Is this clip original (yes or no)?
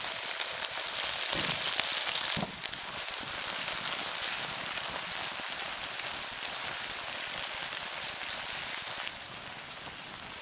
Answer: yes